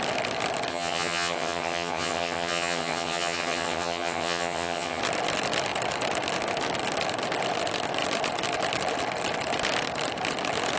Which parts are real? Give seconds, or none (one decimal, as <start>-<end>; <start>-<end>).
0.0-0.7; 5.0-10.8